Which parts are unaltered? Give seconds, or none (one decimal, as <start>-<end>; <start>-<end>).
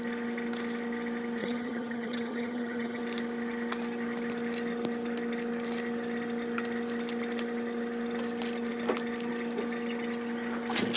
0.0-1.4; 3.0-11.0